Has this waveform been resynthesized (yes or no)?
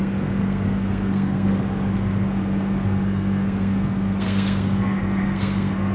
yes